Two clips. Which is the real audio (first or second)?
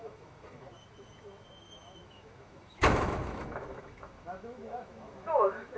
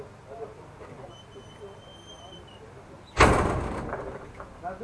second